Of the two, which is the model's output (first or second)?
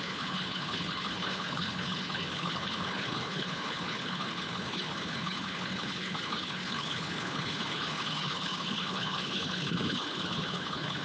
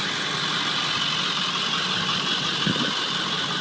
first